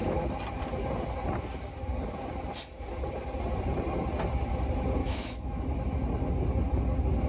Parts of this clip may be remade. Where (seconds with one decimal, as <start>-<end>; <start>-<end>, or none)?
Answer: 5.0-5.6